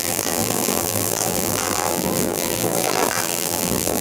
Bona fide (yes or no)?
no